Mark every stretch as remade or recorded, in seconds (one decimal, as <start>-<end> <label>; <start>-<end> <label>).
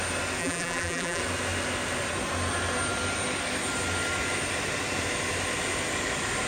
0.0-0.4 recorded; 0.4-1.2 remade; 1.2-6.5 recorded